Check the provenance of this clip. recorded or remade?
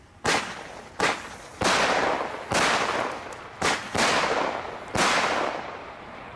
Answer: recorded